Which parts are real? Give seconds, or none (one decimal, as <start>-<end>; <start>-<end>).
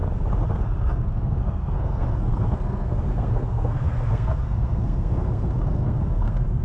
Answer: 0.0-0.5